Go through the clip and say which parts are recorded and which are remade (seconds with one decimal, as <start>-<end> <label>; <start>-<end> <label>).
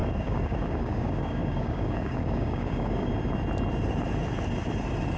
0.0-3.1 remade; 3.1-5.2 recorded